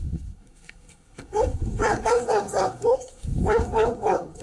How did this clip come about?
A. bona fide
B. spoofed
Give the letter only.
B